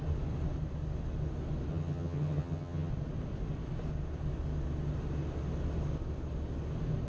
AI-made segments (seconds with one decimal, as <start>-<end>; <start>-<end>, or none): 1.7-2.9